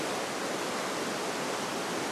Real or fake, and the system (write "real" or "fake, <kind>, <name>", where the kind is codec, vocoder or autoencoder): real